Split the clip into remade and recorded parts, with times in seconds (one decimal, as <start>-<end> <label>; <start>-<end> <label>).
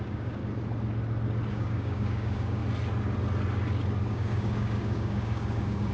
0.0-0.4 remade; 0.4-1.5 recorded; 1.5-2.6 remade; 2.6-4.1 recorded; 4.1-5.9 remade